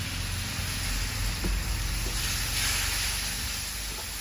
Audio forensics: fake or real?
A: real